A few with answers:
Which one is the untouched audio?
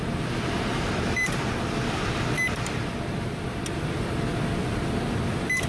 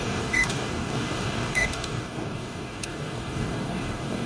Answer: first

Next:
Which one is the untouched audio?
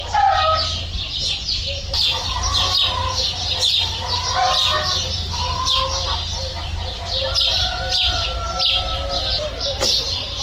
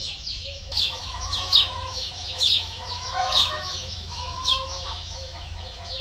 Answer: first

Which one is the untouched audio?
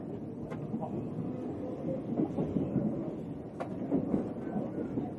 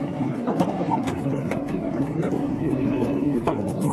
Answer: first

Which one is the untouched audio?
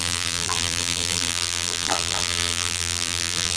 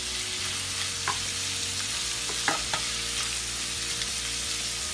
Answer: second